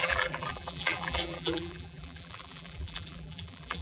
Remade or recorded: remade